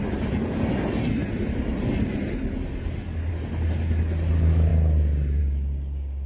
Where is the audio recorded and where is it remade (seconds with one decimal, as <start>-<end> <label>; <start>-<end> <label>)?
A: 0.0-6.3 recorded